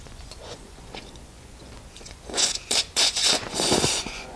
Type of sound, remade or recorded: remade